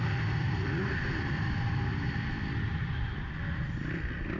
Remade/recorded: recorded